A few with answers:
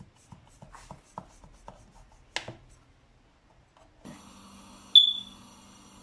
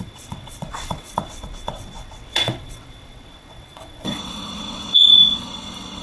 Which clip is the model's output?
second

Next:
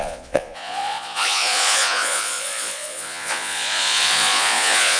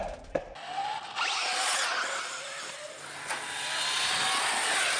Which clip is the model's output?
first